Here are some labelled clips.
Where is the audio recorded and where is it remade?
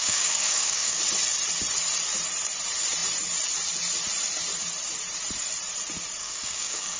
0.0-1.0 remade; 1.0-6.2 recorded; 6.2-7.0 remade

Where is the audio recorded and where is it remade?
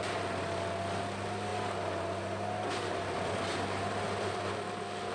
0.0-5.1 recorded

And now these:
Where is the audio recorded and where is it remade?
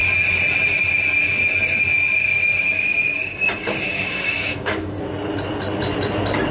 0.0-2.3 recorded; 2.3-5.0 remade; 5.0-6.5 recorded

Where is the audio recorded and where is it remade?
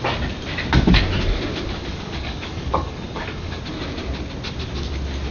0.0-1.8 recorded; 1.8-3.6 remade; 3.6-5.3 recorded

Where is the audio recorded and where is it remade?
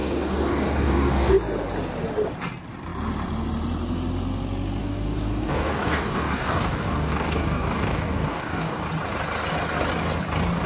0.0-1.3 remade; 1.3-4.8 recorded; 4.8-8.8 remade; 8.8-10.7 recorded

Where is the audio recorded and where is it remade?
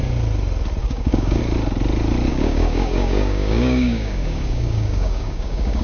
0.0-0.8 recorded; 0.8-1.4 remade; 1.4-2.3 recorded; 2.3-5.8 remade